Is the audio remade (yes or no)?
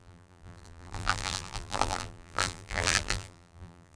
yes